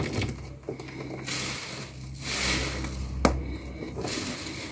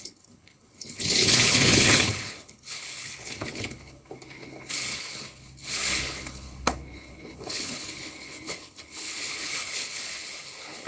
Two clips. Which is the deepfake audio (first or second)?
second